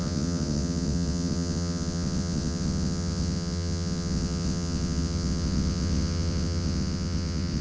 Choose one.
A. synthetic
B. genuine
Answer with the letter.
A